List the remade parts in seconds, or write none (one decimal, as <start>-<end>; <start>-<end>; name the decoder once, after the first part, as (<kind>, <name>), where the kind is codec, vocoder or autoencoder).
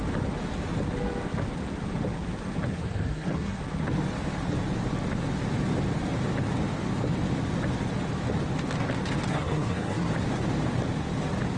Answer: 2.7-3.6 (codec, SNAC); 9.3-10.1